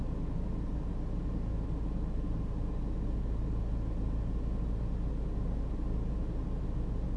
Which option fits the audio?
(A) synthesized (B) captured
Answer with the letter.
B